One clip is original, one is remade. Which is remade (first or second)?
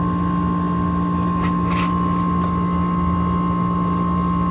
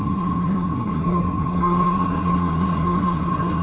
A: second